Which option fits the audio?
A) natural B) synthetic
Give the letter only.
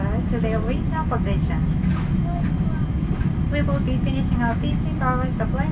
A